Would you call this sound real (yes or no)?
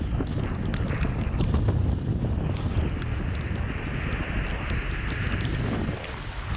yes